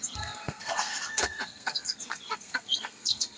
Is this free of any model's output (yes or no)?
no